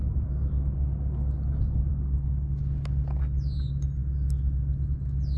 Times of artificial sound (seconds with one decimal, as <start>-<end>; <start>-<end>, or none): none